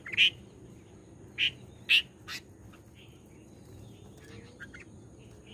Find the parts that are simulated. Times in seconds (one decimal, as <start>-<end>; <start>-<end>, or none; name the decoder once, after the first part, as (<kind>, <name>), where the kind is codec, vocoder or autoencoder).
1.0-1.8 (vocoder, BigVGAN v2)